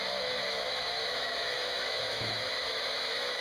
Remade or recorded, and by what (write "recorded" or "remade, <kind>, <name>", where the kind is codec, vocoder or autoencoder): remade, autoencoder, DAC-VAE